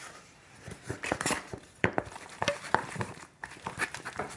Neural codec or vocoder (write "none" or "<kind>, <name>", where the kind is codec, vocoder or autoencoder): vocoder, BigVGAN v2